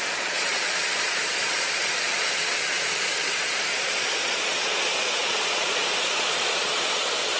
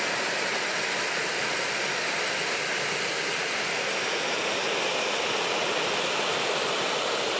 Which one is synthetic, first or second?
first